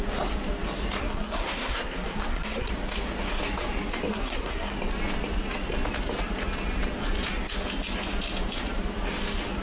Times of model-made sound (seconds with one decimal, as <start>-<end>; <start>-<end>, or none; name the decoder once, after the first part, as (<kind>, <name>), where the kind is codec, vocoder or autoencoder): 1.0-2.7 (codec, SNAC); 4.1-4.7